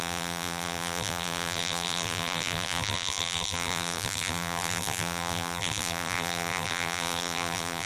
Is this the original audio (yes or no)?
no